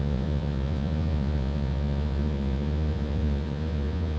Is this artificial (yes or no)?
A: yes